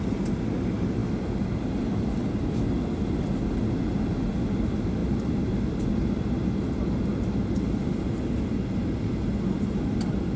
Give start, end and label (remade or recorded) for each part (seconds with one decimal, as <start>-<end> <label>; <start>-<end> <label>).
0.0-10.4 recorded